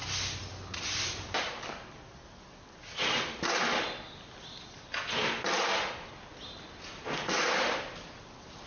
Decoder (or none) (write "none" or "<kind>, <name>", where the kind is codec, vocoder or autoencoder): none